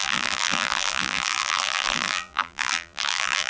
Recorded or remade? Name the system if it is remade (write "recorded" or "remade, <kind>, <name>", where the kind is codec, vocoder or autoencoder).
remade, vocoder, BigVGAN v2